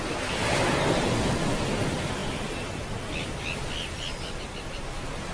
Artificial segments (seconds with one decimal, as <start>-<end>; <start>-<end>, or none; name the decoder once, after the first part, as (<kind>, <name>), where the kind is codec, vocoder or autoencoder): none